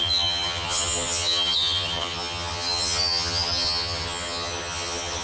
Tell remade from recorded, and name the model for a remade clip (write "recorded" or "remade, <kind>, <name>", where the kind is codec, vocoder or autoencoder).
remade, vocoder, HiFi-GAN